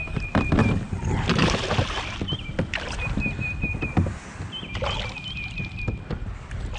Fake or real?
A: real